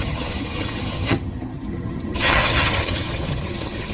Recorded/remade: remade